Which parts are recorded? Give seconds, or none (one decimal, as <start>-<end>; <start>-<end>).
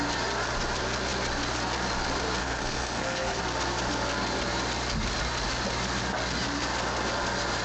0.0-2.4; 3.4-7.6